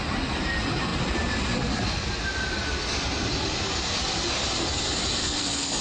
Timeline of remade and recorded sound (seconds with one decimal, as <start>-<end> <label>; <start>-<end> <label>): 0.0-5.2 recorded; 5.2-5.8 remade